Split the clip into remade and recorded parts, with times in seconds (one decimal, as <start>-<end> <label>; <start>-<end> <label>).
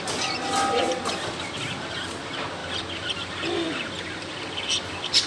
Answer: 0.0-5.3 recorded